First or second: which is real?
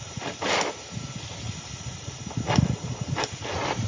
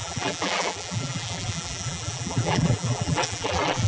first